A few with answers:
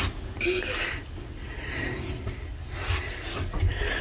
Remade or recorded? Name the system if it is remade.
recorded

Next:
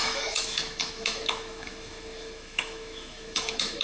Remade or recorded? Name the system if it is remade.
remade, autoencoder, DAC-VAE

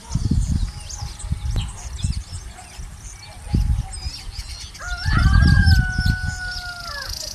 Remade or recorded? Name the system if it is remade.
recorded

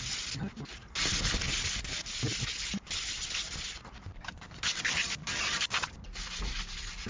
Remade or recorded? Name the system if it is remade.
recorded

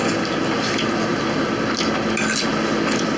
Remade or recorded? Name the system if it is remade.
recorded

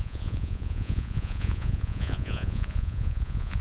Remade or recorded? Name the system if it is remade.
remade, vocoder, Vocos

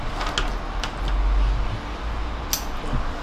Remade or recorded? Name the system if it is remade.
recorded